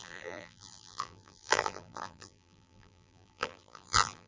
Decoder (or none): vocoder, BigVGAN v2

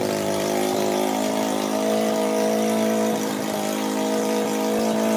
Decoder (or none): vocoder, BigVGAN v2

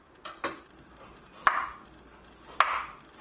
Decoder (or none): none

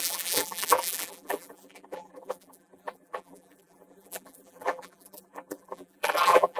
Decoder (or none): vocoder, BigVGAN v2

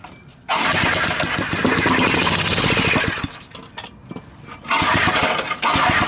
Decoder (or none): none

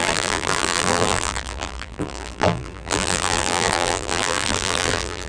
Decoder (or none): vocoder, BigVGAN v2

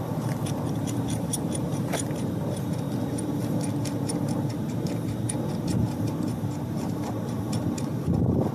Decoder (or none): vocoder, BigVGAN v2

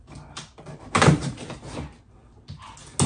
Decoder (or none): none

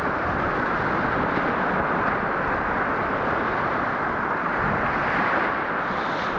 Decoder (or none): none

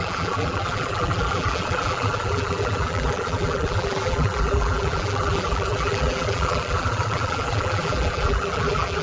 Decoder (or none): vocoder, BigVGAN v2